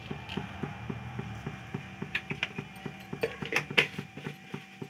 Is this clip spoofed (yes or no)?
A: no